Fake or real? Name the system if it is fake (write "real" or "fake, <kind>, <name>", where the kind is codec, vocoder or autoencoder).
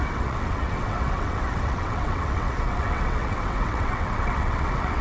fake, vocoder, WaveNeXt